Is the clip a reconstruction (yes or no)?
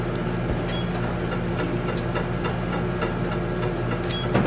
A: no